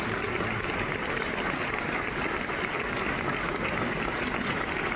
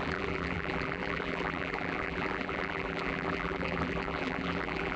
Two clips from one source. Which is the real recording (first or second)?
first